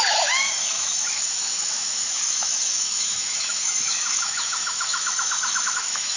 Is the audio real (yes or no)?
no